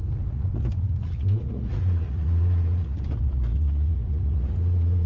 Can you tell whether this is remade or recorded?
remade